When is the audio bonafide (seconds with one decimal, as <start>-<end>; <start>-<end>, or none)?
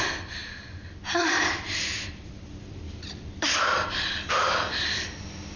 0.4-1.1